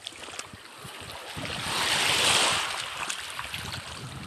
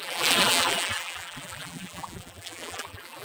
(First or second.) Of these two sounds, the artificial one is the second